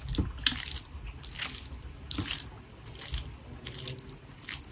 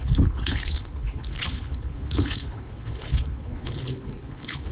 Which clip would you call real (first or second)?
first